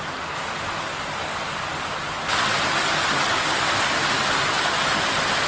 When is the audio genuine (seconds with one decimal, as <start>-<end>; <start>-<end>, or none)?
0.0-5.5

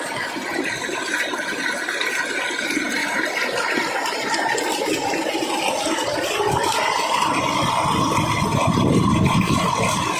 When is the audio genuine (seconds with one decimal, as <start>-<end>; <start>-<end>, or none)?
0.0-3.0; 4.1-10.2

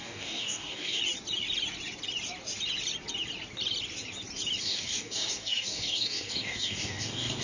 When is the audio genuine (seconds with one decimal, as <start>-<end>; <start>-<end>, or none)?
1.0-4.6

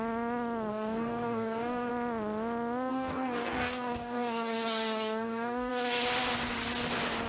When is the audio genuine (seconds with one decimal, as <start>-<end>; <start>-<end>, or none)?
0.0-0.7; 1.9-2.9; 5.7-7.3

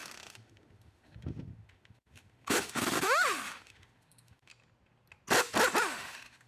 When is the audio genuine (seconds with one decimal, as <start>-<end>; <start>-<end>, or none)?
4.5-5.8

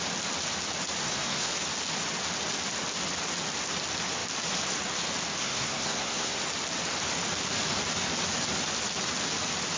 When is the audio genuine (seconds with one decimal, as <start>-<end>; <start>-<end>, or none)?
0.0-1.0; 1.5-5.4; 6.4-9.8

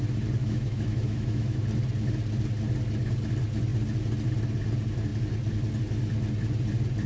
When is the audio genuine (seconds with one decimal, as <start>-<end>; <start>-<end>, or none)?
0.0-0.4; 1.6-7.1